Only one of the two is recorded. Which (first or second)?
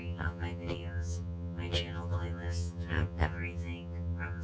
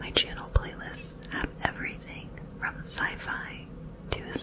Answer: second